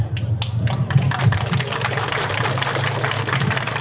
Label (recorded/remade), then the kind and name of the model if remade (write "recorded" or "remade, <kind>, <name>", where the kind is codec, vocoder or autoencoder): recorded